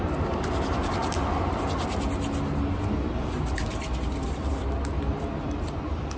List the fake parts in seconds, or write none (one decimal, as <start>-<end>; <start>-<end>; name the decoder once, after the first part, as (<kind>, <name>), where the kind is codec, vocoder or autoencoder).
0.0-1.0 (vocoder, BigVGAN v2); 4.5-6.2